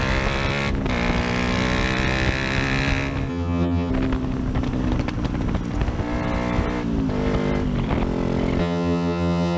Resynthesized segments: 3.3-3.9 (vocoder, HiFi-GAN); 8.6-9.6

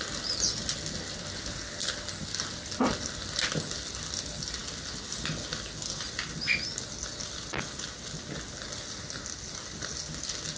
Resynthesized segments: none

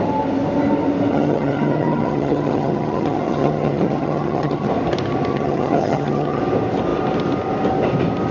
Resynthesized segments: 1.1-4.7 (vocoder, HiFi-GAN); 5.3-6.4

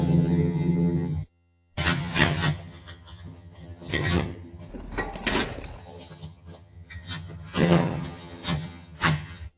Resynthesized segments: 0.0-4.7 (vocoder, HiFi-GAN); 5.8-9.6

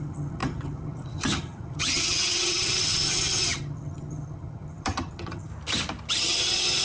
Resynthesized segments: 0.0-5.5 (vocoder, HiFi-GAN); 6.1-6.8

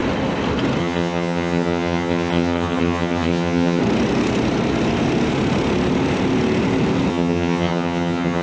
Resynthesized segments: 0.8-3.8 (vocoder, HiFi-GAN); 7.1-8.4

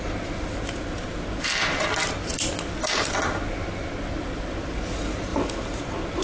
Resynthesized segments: none